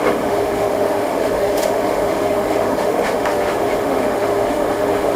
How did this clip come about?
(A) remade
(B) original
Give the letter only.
A